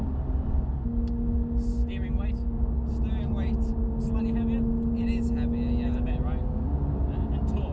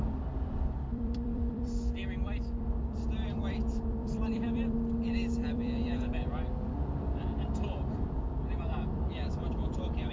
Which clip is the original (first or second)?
first